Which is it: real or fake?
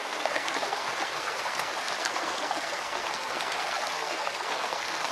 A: fake